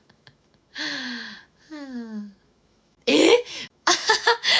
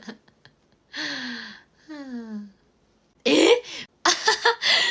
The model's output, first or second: first